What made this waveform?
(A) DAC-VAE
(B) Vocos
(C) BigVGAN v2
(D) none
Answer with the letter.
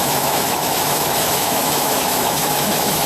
A